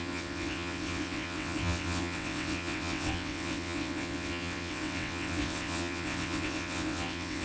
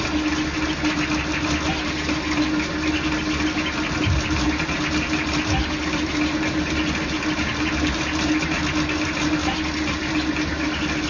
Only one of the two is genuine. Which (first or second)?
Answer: second